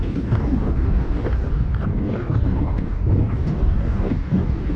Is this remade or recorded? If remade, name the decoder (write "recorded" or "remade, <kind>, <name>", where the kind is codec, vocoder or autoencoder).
remade, codec, DAC